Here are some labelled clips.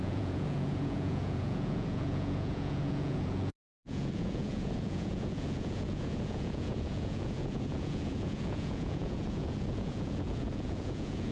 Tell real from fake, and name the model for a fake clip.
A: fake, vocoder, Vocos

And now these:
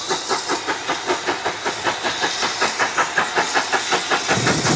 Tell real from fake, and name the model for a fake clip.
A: real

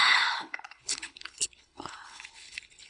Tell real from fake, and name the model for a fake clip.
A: fake, codec, HILCodec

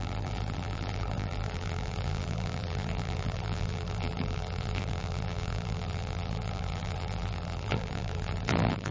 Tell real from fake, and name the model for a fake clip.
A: fake, vocoder, BigVGAN v2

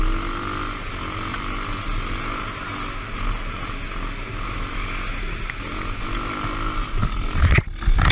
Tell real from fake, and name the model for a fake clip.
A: real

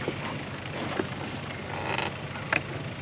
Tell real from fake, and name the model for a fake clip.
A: real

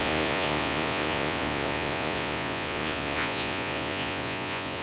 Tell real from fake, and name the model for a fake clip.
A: fake, vocoder, Vocos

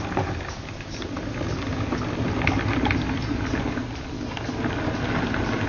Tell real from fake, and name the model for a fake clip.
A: real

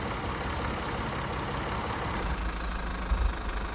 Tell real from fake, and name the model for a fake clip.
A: real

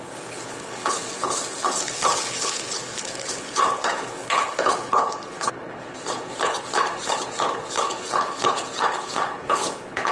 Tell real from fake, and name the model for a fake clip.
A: fake, codec, HILCodec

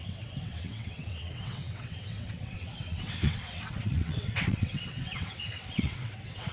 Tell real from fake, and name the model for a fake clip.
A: fake, vocoder, WaveNeXt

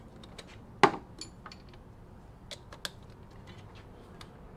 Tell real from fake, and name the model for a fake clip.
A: real